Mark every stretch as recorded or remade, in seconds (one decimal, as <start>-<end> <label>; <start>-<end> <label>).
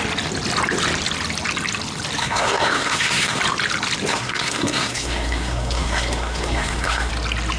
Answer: 0.0-2.2 recorded; 2.2-3.4 remade; 3.4-4.1 recorded; 4.1-7.1 remade; 7.1-7.6 recorded